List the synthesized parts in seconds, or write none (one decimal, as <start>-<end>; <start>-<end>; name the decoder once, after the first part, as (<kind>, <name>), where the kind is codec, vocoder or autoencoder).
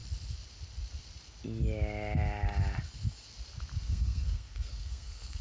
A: 3.8-5.4 (codec, SNAC)